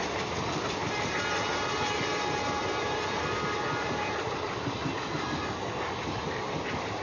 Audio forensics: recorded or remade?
recorded